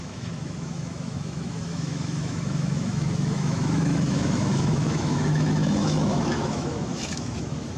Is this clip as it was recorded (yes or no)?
no